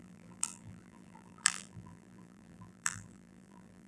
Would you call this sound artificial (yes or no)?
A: yes